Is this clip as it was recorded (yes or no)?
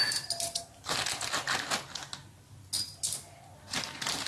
yes